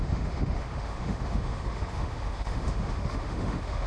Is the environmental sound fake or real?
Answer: fake